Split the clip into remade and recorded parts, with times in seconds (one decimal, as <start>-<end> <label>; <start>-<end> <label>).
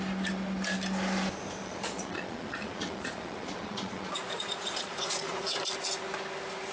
0.0-1.6 recorded; 1.6-5.6 remade; 5.6-6.7 recorded